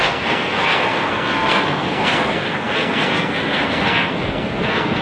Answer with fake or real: fake